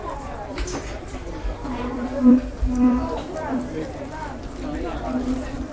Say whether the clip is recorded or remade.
remade